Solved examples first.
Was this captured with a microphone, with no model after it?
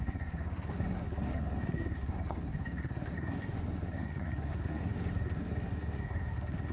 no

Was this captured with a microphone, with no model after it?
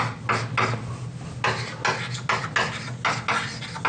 yes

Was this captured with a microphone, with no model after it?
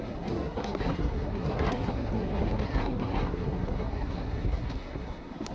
no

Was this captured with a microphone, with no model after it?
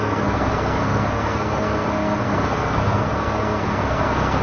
no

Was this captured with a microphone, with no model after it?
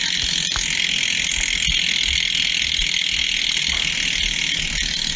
yes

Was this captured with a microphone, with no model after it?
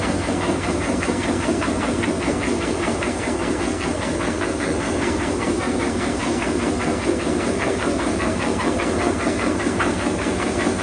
no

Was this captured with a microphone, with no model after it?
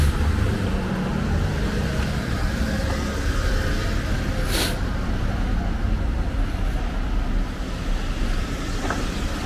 yes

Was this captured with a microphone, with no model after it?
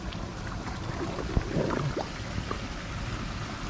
yes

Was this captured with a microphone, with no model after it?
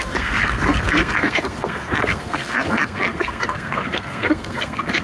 no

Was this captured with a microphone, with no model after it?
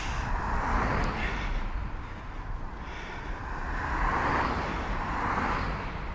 yes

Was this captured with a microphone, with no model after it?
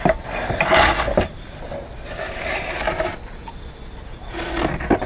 yes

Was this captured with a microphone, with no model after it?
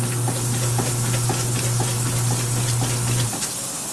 yes